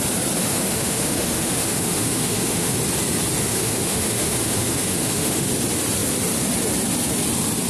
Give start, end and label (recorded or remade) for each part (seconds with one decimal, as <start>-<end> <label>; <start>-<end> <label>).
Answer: 0.0-0.4 recorded; 0.4-2.8 remade; 2.8-3.5 recorded; 3.5-5.5 remade; 5.5-7.7 recorded